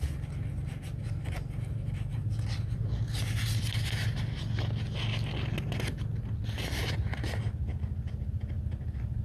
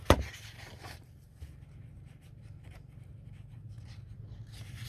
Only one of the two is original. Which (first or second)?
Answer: first